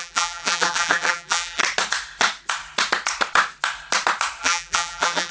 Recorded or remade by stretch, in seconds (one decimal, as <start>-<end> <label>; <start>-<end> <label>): 0.0-1.6 remade; 1.6-4.4 recorded; 4.4-5.3 remade